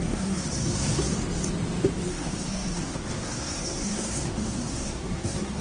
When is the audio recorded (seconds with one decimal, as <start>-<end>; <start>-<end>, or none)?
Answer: 1.1-2.1